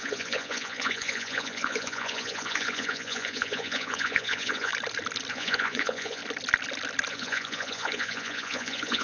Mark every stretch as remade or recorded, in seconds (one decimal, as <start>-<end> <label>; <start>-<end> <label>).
0.0-4.7 remade; 4.7-5.3 recorded; 5.3-6.2 remade; 6.2-7.1 recorded; 7.1-9.0 remade